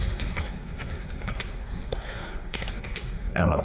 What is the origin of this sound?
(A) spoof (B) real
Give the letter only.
A